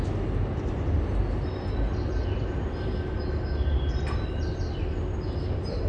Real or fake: real